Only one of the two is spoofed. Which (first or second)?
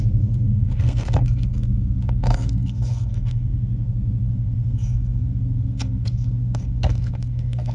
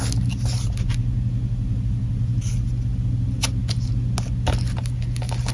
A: first